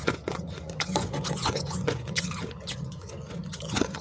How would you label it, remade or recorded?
remade